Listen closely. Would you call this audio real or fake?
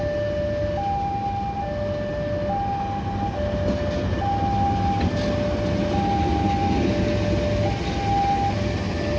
real